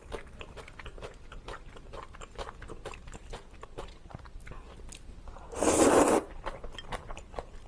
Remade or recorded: recorded